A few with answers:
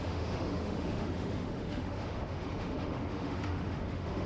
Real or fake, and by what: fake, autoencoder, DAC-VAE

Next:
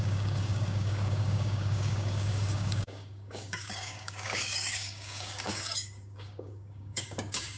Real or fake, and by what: fake, codec, DAC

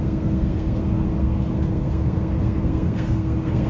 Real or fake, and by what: fake, codec, SNAC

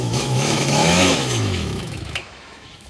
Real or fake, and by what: fake, autoencoder, DAC-VAE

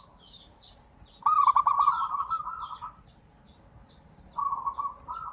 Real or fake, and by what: fake, vocoder, BigVGAN v2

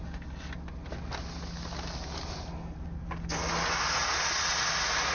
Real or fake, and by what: real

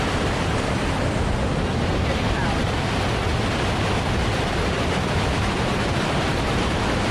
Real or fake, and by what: fake, vocoder, BigVGAN v2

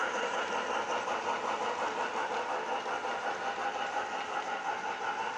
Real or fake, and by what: fake, vocoder, BigVGAN v2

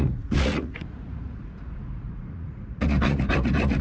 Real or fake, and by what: fake, vocoder, Vocos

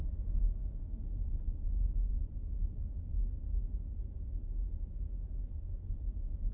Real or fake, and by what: real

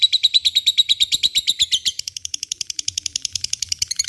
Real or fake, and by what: fake, vocoder, BigVGAN v2